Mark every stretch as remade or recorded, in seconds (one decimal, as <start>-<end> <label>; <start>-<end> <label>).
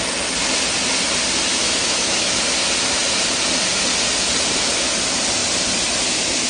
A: 0.0-1.5 recorded; 1.5-2.4 remade; 2.4-6.5 recorded